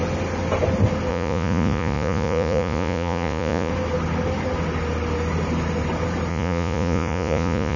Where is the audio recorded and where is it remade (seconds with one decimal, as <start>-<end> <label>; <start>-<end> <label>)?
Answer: 0.0-1.1 recorded; 1.1-3.7 remade; 3.7-6.3 recorded; 6.3-7.8 remade

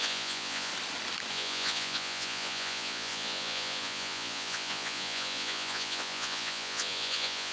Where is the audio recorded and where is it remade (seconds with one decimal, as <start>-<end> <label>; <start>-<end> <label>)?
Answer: 0.0-0.7 remade; 0.7-1.3 recorded; 1.3-7.5 remade